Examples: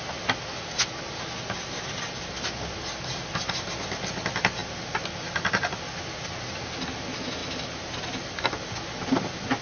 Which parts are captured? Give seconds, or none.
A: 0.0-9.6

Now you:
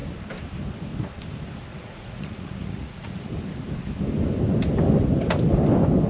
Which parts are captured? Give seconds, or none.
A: 0.0-1.7; 3.3-6.1

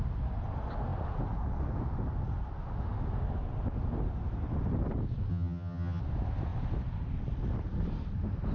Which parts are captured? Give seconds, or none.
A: 0.0-5.3; 6.0-8.5

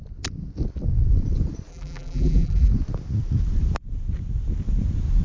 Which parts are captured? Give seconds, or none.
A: 0.0-1.7; 2.7-5.2